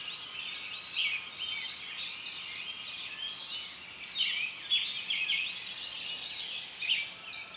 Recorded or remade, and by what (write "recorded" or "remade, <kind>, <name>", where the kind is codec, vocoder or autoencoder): recorded